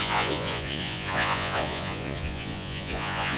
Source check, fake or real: fake